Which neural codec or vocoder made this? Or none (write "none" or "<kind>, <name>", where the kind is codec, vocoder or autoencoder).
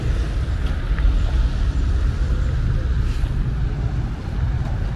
none